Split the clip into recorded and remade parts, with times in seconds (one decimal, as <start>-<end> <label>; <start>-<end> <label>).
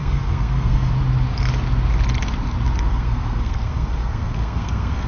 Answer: 0.0-0.9 remade; 0.9-2.9 recorded; 2.9-5.1 remade